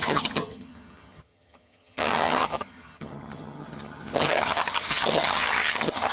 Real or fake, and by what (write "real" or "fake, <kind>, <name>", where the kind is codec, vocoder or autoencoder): fake, vocoder, HiFi-GAN